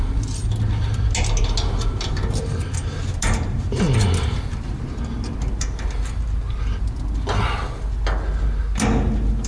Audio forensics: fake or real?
real